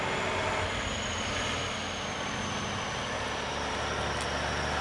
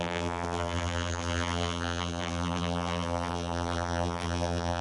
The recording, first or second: first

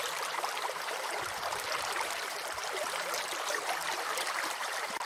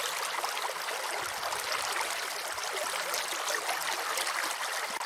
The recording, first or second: second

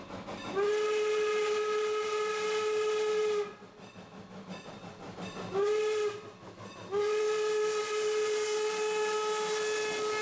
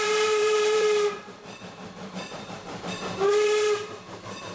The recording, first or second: first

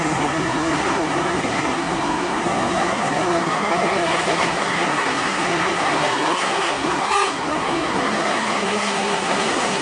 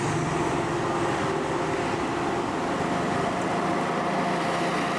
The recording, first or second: second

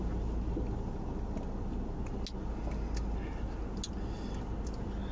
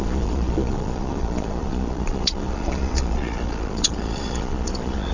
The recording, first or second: first